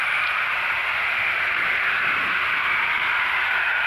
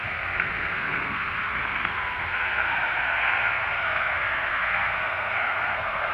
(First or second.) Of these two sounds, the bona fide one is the first